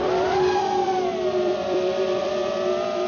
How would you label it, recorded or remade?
remade